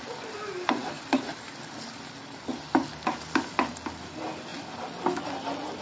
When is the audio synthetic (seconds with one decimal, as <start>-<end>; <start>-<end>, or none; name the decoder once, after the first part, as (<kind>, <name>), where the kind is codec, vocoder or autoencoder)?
none